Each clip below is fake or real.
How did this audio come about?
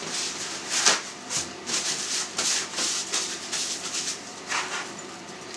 real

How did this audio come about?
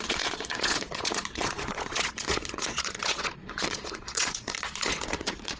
fake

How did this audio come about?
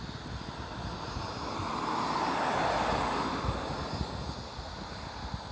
real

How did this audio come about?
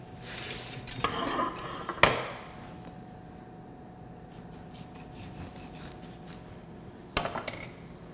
real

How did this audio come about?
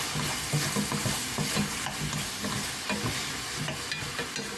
real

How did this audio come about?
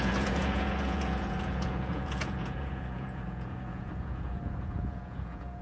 fake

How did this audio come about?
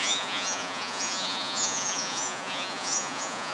fake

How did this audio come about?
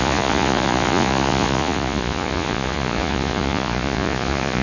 fake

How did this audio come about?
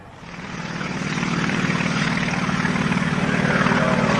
fake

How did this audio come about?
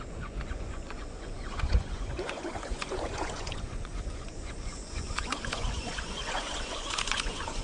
fake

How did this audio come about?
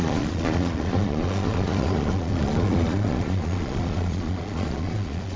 fake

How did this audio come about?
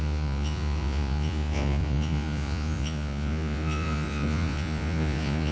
fake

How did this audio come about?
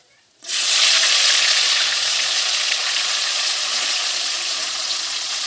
fake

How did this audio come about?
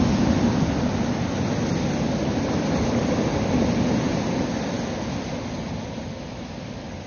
real